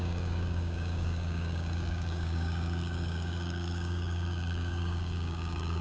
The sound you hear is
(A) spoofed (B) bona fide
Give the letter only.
A